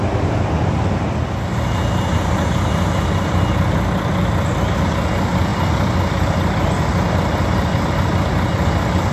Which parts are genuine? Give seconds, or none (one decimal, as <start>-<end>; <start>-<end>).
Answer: 0.0-9.1